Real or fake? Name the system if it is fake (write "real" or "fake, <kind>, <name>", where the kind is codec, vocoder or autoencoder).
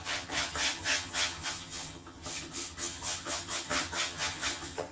fake, vocoder, HiFi-GAN